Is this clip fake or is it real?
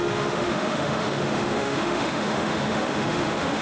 fake